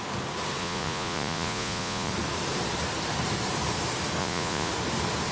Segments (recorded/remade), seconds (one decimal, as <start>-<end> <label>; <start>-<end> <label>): 0.0-0.6 recorded; 0.6-2.1 remade; 2.1-4.2 recorded; 4.2-4.7 remade; 4.7-5.3 recorded